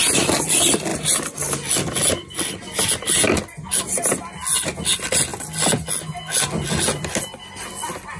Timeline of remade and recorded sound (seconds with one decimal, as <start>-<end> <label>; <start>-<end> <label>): 0.0-8.2 recorded